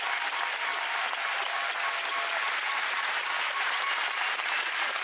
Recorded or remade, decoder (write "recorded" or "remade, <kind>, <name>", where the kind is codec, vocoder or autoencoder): recorded